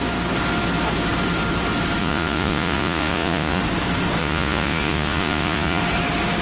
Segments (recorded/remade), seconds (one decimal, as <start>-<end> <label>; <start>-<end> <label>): 0.0-2.0 recorded; 2.0-3.6 remade; 3.6-4.2 recorded; 4.2-5.8 remade; 5.8-6.4 recorded